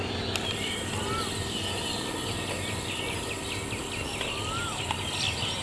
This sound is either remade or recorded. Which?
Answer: recorded